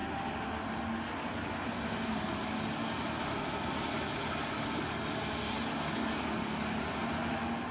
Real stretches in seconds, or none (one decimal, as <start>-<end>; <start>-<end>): 0.0-7.7